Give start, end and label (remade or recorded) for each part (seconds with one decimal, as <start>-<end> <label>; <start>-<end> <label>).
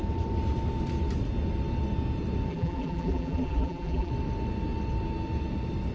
0.0-2.5 recorded; 2.5-4.1 remade; 4.1-5.9 recorded